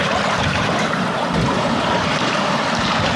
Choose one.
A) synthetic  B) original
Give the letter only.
A